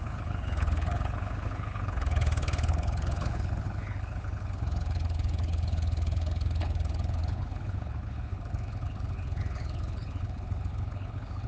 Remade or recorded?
remade